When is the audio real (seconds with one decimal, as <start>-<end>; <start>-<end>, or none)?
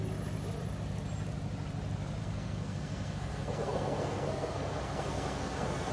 0.0-2.2